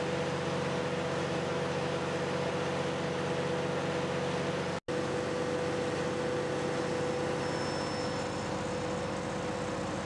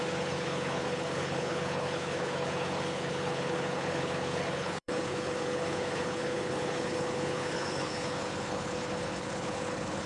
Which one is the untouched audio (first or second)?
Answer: first